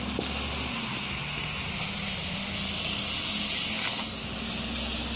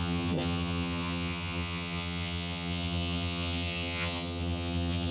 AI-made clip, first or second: second